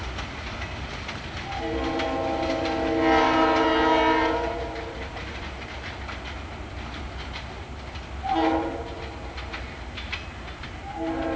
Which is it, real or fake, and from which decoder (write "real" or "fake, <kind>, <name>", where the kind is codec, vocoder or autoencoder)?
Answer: real